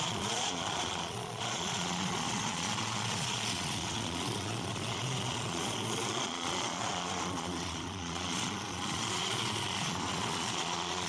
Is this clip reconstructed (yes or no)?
yes